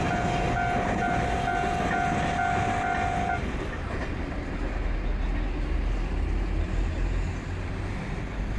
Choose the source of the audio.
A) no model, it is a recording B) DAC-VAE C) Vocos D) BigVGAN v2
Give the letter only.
A